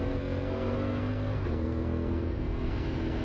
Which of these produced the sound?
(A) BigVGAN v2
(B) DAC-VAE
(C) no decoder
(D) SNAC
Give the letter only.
D